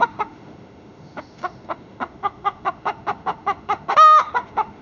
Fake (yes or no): yes